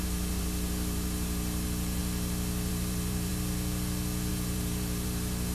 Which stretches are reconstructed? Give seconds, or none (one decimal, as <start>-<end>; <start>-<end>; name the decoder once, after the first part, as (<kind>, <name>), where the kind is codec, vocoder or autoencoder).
0.0-2.0 (vocoder, BigVGAN v2); 2.7-3.3; 4.3-5.5